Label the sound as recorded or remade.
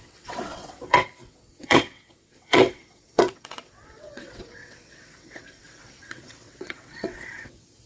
remade